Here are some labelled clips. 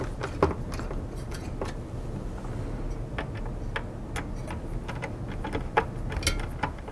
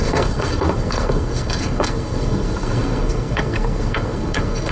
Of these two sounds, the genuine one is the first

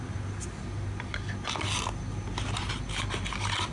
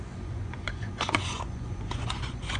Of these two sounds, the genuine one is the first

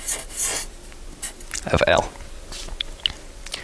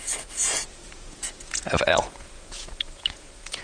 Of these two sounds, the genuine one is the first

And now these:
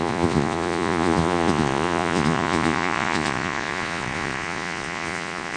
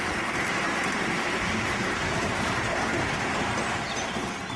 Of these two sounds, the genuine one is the second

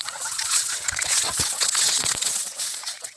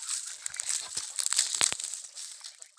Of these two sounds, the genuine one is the second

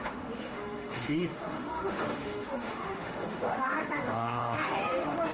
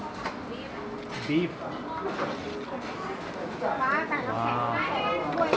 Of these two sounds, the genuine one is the second